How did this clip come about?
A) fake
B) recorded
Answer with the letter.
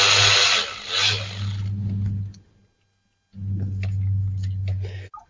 B